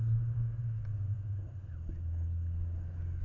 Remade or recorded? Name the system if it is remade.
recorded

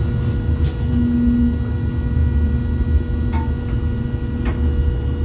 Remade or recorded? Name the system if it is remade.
recorded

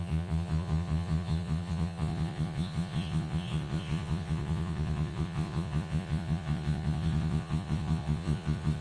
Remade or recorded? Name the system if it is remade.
remade, vocoder, Vocos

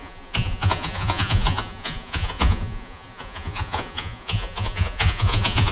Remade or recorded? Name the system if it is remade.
remade, vocoder, Vocos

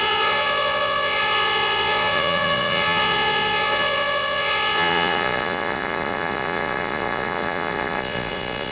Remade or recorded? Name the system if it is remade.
remade, vocoder, Vocos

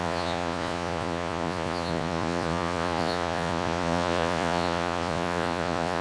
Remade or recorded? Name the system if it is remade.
remade, vocoder, Vocos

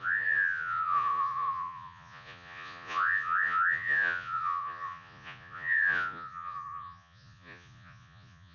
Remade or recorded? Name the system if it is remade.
remade, vocoder, Vocos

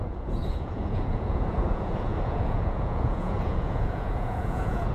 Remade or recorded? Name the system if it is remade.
remade, vocoder, Vocos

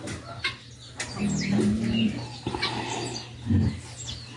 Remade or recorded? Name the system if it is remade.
recorded